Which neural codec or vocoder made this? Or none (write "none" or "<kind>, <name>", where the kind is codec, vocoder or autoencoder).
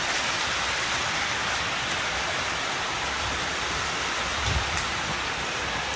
vocoder, BigVGAN v2